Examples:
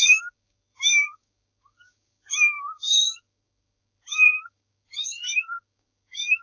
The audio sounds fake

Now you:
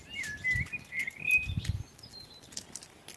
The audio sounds real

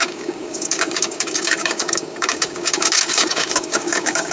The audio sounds fake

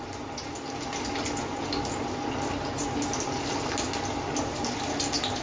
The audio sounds real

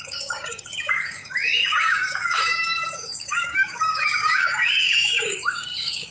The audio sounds fake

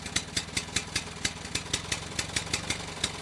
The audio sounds real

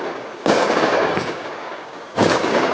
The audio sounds fake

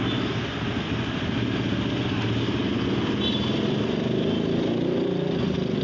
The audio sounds real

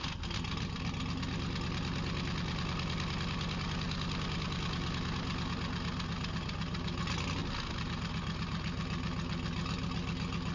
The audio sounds real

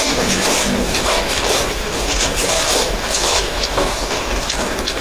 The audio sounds fake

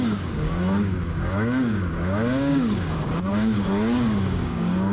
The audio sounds fake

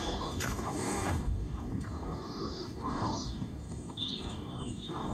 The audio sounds fake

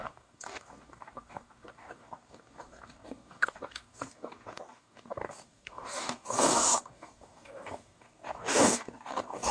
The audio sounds fake